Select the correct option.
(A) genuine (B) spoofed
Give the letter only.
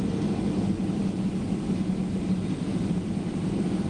A